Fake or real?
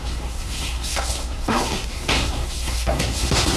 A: fake